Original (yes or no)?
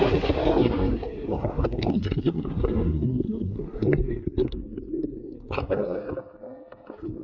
no